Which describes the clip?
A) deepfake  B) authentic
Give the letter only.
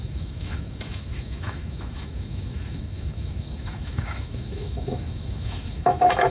A